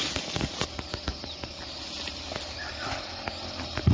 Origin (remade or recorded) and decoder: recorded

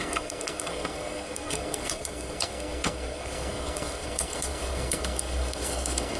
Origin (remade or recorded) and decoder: remade, codec, SNAC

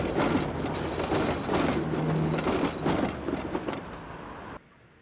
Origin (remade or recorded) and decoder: recorded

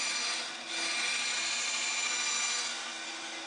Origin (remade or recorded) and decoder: recorded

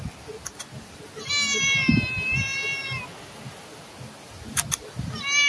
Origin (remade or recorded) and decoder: recorded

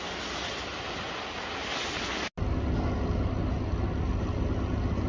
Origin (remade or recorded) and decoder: recorded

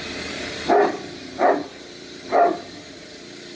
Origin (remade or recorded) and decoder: recorded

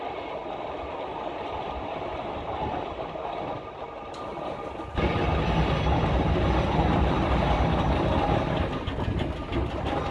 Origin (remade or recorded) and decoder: recorded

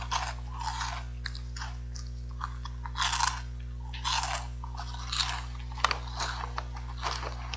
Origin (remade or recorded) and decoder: recorded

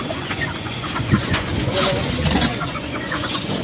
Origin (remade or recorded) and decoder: remade, vocoder, Vocos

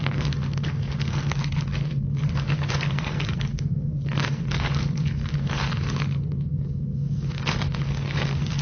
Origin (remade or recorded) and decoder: remade, codec, SNAC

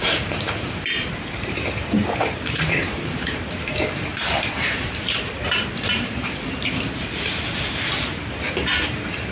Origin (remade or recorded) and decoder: remade, vocoder, BigVGAN v2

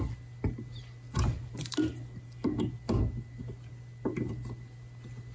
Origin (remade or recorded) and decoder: recorded